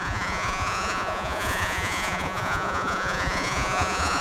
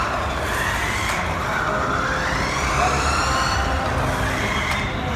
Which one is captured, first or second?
second